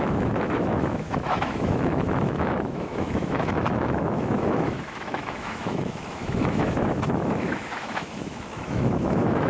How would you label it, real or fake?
fake